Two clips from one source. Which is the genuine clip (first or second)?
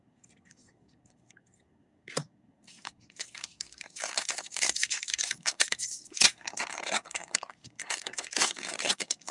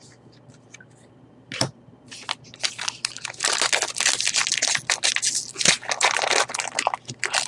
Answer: second